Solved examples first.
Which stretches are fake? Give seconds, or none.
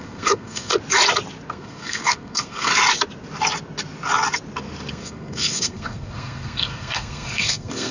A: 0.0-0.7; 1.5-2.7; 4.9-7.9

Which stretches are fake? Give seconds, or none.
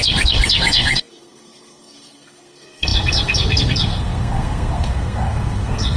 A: 0.0-6.0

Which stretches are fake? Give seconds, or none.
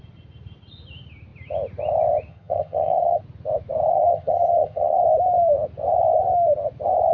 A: 2.3-3.2; 3.9-5.0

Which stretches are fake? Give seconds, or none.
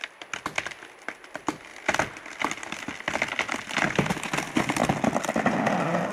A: none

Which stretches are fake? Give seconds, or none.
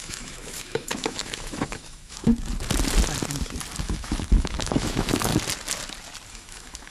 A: 0.0-2.3; 3.8-5.3; 6.3-6.9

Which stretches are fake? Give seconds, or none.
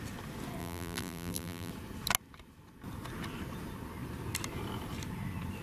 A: 0.6-1.7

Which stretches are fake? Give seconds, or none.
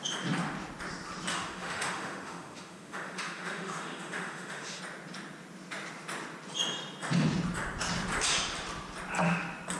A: 1.3-4.8